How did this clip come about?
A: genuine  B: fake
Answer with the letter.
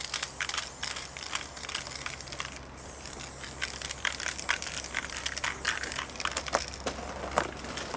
A